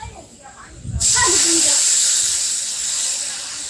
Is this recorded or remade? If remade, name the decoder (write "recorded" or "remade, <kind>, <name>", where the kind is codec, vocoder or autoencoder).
remade, vocoder, BigVGAN v2